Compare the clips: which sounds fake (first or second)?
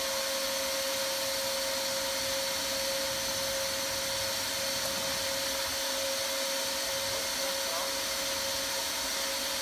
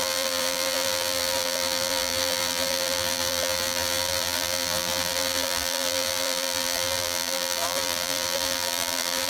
second